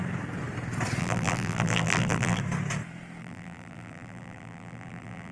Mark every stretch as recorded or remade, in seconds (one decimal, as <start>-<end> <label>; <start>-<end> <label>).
0.0-1.0 recorded; 1.0-2.4 remade; 2.4-3.2 recorded; 3.2-5.3 remade